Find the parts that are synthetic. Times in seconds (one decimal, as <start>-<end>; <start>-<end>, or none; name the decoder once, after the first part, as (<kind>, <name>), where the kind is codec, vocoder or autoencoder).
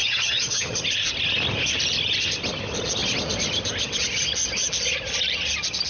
0.0-0.8 (vocoder, HiFi-GAN)